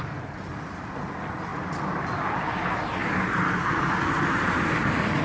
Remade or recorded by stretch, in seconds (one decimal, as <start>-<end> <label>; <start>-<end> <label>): 0.0-3.0 recorded; 3.0-3.9 remade; 3.9-5.2 recorded